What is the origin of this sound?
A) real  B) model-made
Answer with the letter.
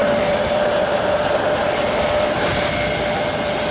A